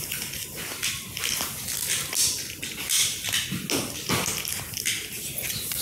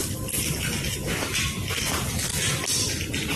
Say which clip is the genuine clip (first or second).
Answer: first